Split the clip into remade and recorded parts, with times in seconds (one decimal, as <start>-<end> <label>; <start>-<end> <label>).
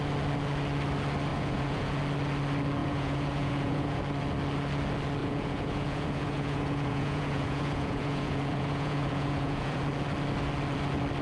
0.0-1.3 recorded; 1.3-2.0 remade; 2.0-2.8 recorded; 2.8-4.0 remade; 4.0-5.2 recorded; 5.2-9.8 remade; 9.8-11.2 recorded